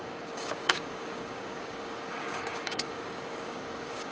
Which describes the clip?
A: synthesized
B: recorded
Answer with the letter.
A